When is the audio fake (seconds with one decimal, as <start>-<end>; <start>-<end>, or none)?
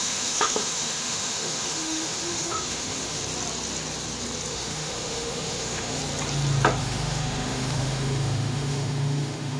0.0-3.2; 4.5-6.0; 6.8-9.6